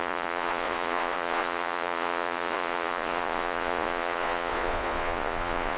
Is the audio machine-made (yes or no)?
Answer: yes